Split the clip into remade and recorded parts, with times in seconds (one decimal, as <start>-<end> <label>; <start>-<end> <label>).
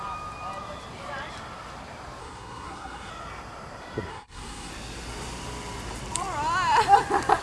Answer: 0.0-2.2 recorded; 2.2-3.1 remade; 3.1-4.1 recorded; 4.1-4.7 remade; 4.7-7.4 recorded